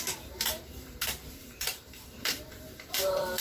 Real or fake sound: fake